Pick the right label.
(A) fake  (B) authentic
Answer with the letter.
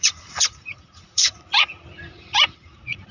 A